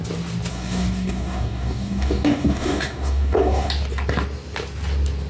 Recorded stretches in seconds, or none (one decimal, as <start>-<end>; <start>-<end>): 0.0-0.5; 3.7-5.3